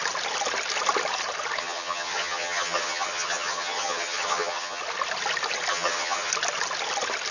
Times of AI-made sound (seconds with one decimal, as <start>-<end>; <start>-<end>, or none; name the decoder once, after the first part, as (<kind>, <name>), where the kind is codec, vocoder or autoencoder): 1.6-4.8 (vocoder, HiFi-GAN); 5.7-6.3